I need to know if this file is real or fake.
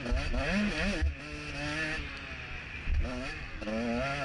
real